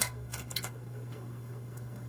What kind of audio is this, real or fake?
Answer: fake